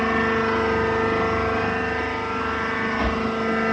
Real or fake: real